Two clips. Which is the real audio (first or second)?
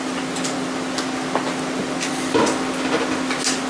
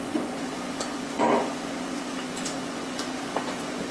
first